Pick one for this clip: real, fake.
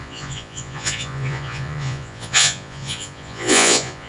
fake